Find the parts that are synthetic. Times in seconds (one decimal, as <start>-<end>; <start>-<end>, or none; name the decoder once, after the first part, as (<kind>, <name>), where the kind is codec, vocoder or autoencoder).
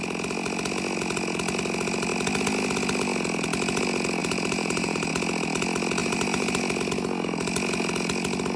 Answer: 4.2-5.1 (vocoder, BigVGAN v2); 6.0-6.6